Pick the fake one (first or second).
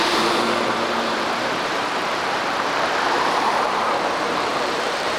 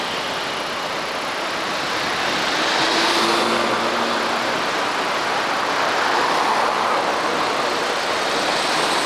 first